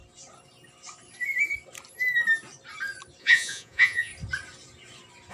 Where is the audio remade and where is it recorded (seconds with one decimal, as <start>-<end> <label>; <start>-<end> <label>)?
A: 0.0-3.2 recorded; 3.2-4.1 remade; 4.1-5.3 recorded